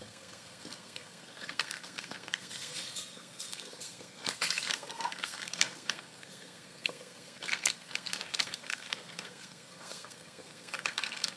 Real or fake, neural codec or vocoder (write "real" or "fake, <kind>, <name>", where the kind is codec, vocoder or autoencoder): fake, codec, SNAC